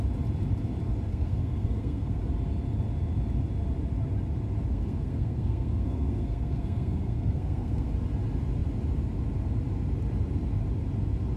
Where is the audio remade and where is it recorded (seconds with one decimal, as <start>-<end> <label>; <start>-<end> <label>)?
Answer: 0.0-1.1 recorded; 1.1-2.2 remade; 2.2-4.7 recorded; 4.7-7.9 remade; 7.9-11.4 recorded